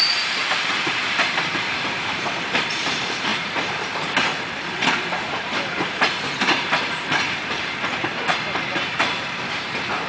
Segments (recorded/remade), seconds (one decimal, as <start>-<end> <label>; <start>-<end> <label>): 0.0-10.1 remade